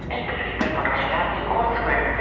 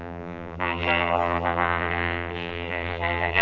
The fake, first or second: second